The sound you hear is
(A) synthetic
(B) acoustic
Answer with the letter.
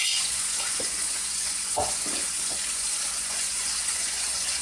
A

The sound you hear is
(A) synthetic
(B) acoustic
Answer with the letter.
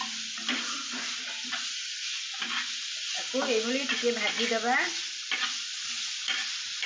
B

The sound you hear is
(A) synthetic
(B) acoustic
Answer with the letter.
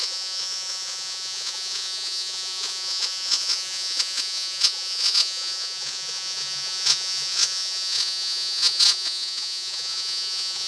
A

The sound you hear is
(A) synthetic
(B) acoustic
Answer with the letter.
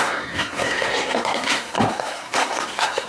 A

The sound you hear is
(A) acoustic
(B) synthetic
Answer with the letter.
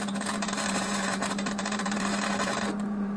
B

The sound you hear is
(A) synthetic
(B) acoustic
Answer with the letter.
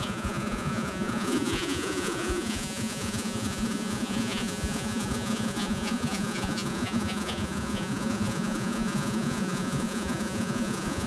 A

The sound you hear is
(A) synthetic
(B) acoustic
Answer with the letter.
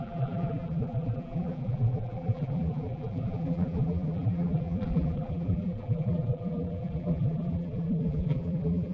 A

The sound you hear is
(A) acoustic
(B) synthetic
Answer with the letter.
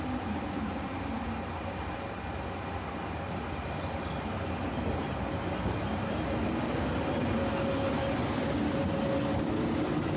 A